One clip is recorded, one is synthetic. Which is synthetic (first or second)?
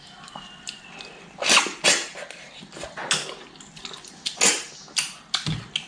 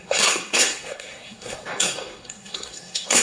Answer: second